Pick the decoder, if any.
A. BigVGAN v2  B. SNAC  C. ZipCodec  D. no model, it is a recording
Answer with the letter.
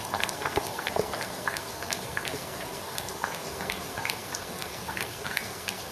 B